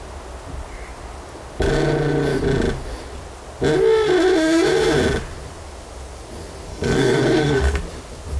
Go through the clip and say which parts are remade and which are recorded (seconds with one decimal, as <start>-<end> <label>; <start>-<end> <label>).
0.0-6.7 recorded; 6.7-7.8 remade; 7.8-8.4 recorded